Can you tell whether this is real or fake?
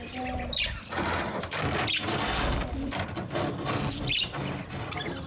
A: real